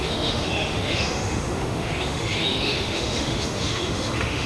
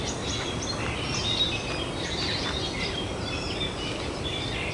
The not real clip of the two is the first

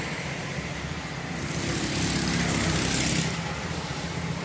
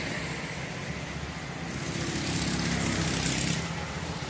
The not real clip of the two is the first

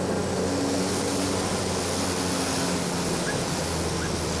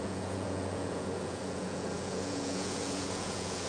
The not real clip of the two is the second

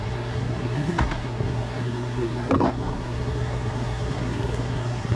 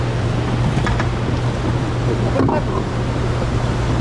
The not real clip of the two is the first